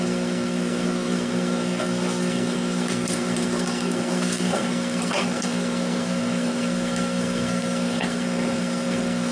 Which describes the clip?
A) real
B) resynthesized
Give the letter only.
B